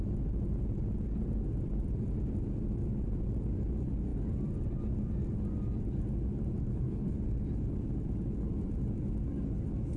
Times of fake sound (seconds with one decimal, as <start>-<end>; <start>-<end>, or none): 6.7-7.2